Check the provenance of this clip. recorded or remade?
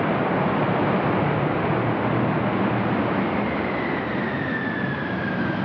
recorded